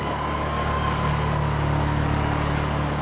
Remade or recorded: remade